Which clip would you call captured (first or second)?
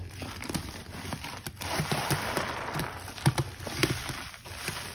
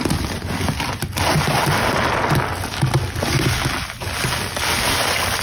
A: second